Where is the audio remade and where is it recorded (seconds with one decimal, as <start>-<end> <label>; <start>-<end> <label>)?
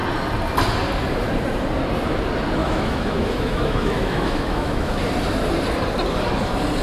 0.0-2.6 recorded; 2.6-5.0 remade; 5.0-6.8 recorded